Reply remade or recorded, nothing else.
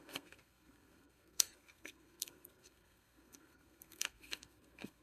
remade